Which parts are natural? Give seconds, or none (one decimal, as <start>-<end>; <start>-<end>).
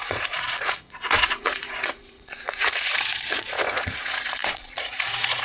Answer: none